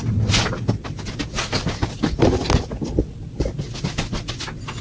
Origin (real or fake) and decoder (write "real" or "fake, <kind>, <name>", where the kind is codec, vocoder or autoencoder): real